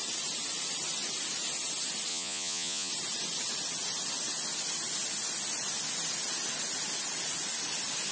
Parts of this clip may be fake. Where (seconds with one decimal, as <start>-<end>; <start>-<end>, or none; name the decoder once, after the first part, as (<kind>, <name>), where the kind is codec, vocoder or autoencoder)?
2.1-2.9 (vocoder, Vocos)